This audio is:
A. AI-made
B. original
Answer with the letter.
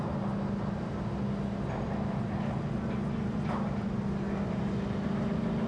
B